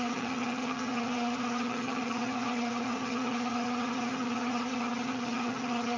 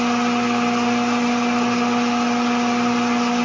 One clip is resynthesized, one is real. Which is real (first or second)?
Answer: second